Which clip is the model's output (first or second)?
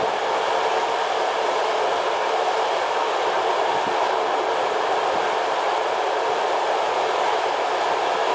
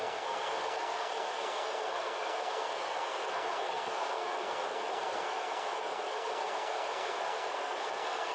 second